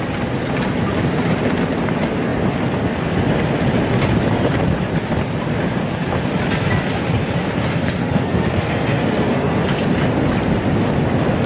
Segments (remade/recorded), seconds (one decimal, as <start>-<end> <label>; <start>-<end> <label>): 0.0-8.0 recorded; 8.0-9.6 remade; 9.6-11.5 recorded